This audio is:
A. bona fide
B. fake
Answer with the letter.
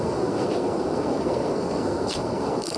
B